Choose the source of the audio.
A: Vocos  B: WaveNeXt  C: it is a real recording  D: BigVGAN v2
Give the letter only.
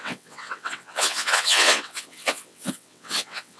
B